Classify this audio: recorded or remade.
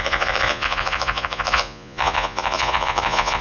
remade